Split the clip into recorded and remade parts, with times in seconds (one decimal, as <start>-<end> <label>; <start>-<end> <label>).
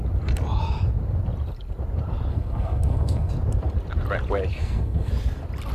0.0-2.3 recorded; 2.3-3.3 remade; 3.3-4.5 recorded; 4.5-5.1 remade; 5.1-5.7 recorded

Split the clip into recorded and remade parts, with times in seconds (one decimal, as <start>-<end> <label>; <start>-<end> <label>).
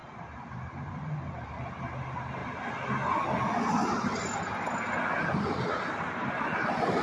0.0-7.0 recorded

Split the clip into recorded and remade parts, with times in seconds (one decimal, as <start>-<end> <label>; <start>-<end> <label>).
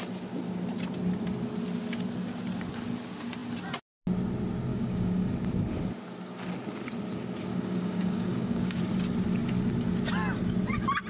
0.0-4.7 recorded; 4.7-5.3 remade; 5.3-7.5 recorded; 7.5-8.8 remade; 8.8-11.1 recorded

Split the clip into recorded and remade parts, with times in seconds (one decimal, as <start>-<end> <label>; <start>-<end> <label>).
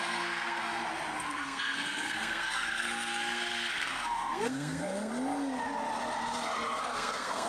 0.0-0.7 remade; 0.7-1.3 recorded; 1.3-5.1 remade; 5.1-6.8 recorded; 6.8-7.5 remade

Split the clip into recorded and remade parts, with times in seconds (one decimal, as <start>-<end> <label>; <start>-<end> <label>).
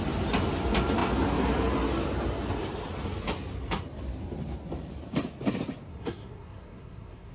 0.0-5.9 recorded; 5.9-7.3 remade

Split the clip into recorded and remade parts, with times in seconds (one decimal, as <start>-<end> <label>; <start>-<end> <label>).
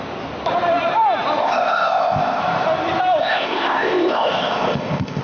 0.0-1.4 recorded; 1.4-2.4 remade; 2.4-3.2 recorded; 3.2-5.2 remade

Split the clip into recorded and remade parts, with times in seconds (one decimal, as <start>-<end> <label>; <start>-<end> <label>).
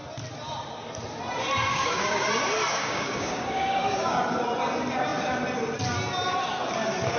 0.0-1.7 recorded; 1.7-2.3 remade; 2.3-2.7 recorded; 2.7-4.2 remade; 4.2-7.2 recorded